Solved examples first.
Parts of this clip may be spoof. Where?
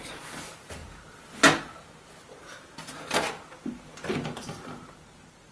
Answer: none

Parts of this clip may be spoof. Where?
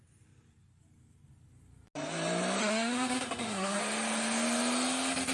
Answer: 2.6-3.8 (codec, SNAC)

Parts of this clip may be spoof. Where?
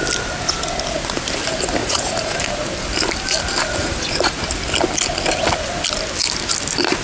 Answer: 1.8-2.4 (vocoder, Vocos); 3.8-4.4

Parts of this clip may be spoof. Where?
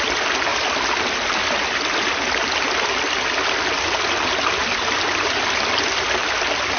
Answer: none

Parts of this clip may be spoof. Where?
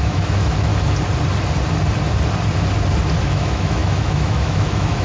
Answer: 0.0-0.7 (autoencoder, DAC-VAE); 3.2-5.0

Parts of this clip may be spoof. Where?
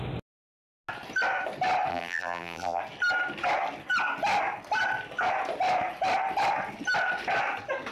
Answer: 1.9-2.8 (vocoder, BigVGAN v2)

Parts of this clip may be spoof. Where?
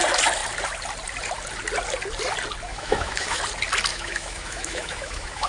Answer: 2.7-3.4 (autoencoder, DAC-VAE); 3.9-5.5